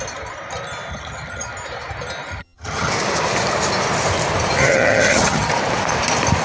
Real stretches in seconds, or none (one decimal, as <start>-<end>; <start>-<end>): 0.0-0.9; 1.5-2.3; 2.9-4.6; 5.5-6.4